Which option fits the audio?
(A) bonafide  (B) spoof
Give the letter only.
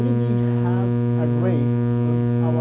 A